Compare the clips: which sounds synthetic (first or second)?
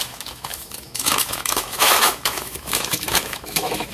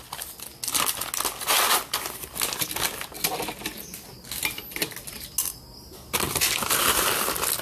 first